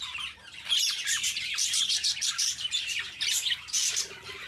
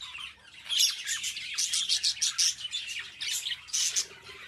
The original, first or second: second